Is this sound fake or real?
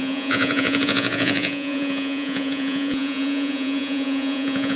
fake